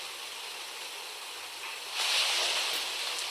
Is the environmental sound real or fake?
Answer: real